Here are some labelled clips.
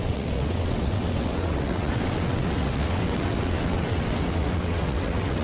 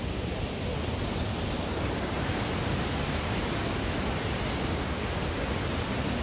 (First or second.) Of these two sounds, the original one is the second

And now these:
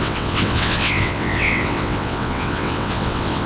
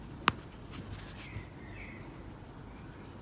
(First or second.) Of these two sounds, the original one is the second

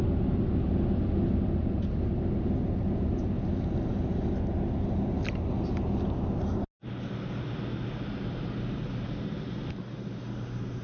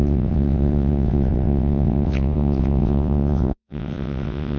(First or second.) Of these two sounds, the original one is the first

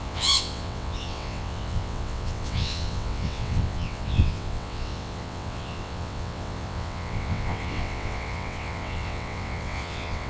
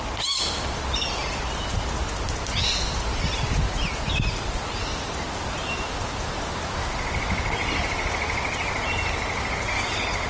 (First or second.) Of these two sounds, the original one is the second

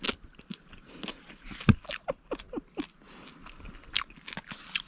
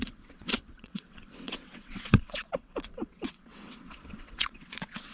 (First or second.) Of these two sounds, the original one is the first